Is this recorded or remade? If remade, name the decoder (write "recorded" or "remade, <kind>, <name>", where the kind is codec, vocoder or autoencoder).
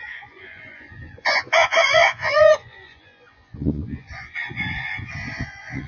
remade, vocoder, Vocos